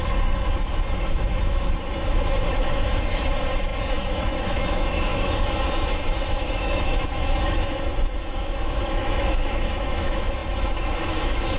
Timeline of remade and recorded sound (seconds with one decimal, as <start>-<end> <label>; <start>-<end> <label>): 0.0-11.6 remade